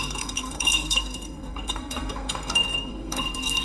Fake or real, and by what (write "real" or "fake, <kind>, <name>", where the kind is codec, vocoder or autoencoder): fake, codec, SNAC